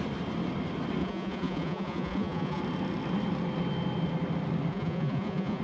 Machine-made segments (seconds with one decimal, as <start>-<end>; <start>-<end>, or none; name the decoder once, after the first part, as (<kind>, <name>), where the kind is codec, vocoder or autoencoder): 1.0-2.6 (vocoder, Vocos); 4.7-5.6